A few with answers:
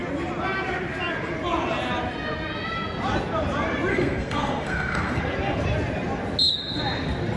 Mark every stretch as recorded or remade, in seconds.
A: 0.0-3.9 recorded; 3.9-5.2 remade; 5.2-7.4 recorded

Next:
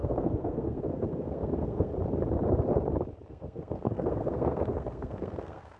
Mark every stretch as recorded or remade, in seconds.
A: 0.0-1.9 remade; 1.9-3.3 recorded; 3.3-5.8 remade